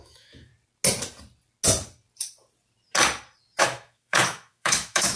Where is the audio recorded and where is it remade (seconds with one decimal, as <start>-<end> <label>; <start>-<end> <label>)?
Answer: 0.0-0.5 remade; 0.5-3.6 recorded; 3.6-5.2 remade